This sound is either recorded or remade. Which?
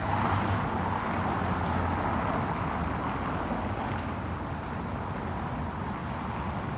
recorded